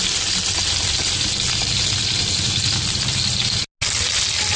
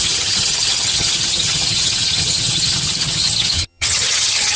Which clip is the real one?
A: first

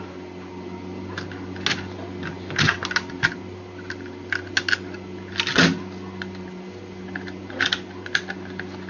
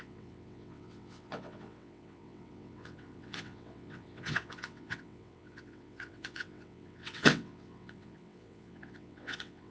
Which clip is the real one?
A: first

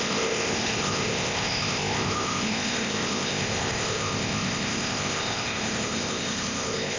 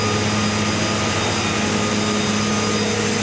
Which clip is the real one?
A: second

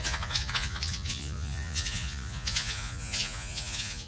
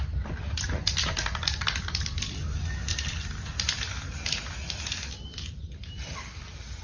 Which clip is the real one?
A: second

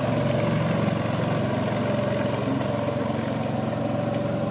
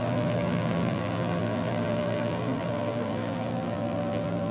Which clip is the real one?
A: first